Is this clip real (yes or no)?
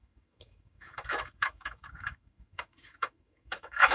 no